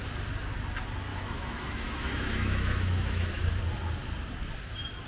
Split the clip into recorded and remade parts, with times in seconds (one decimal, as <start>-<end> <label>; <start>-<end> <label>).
0.0-1.1 recorded; 1.1-3.5 remade; 3.5-5.1 recorded